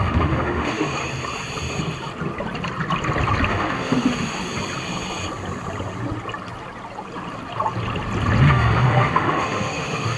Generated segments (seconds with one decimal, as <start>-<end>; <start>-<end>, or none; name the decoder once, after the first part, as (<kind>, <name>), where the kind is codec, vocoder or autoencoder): 0.0-1.0 (autoencoder, DAC-VAE); 3.5-4.5; 8.4-10.2